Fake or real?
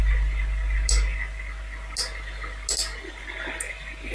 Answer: real